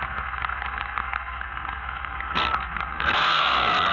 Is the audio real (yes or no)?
no